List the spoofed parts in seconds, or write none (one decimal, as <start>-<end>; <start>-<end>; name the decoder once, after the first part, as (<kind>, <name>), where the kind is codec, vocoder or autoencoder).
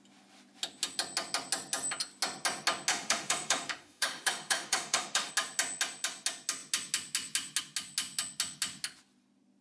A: 2.9-5.3 (autoencoder, DAC-VAE)